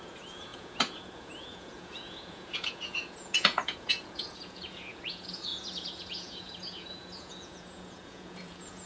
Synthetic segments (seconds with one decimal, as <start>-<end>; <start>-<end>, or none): 0.0-8.9